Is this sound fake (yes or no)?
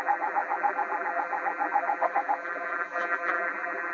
yes